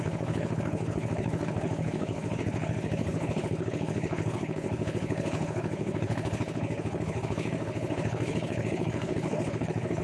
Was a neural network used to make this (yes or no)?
yes